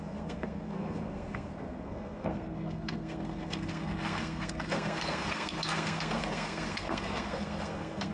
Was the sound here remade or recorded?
remade